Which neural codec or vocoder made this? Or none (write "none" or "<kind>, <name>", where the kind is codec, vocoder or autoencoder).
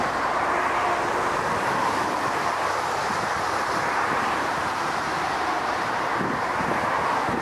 vocoder, BigVGAN v2